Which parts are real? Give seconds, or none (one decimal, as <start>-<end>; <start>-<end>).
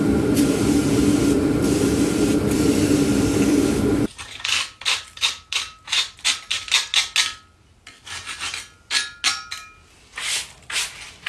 6.9-10.0